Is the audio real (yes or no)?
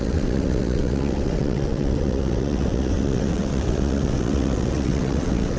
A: no